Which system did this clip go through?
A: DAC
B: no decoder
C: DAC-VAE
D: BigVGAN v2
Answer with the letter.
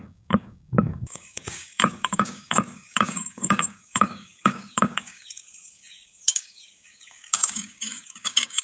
A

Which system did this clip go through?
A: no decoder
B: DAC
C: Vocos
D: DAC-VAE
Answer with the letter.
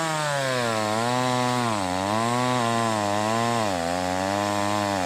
A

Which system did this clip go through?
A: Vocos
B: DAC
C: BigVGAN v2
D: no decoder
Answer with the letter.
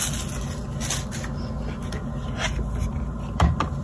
D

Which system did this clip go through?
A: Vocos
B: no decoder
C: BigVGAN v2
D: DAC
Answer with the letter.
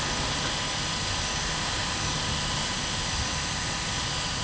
B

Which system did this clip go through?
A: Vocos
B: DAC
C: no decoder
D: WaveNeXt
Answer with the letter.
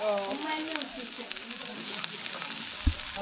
C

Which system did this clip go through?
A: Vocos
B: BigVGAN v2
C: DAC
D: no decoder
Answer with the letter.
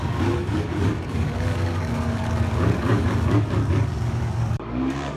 C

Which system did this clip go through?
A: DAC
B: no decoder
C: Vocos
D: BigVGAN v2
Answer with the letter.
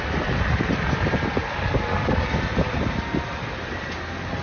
B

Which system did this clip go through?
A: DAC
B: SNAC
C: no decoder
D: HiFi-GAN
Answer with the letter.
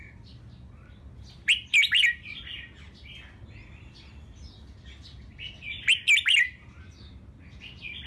C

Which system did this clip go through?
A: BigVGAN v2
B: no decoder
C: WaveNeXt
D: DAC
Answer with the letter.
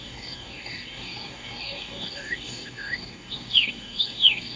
D